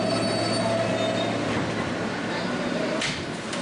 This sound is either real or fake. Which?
real